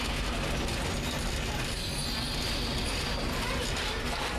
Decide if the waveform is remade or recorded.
recorded